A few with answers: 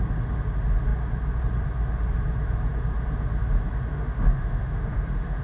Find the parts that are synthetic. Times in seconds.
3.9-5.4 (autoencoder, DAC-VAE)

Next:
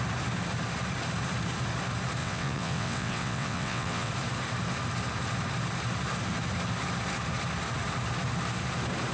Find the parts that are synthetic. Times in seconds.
2.2-4.1 (vocoder, WaveNeXt)

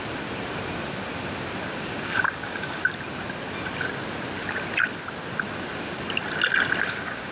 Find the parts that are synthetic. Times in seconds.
1.8-2.8 (codec, DAC); 6.8-7.3

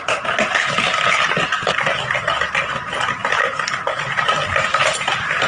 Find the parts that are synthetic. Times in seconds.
4.8-5.5 (vocoder, BigVGAN v2)